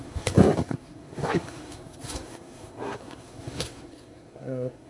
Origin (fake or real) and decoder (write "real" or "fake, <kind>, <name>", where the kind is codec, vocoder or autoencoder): fake, codec, SNAC